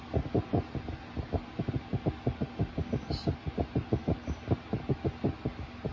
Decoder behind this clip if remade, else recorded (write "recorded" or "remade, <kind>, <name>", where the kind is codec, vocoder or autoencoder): recorded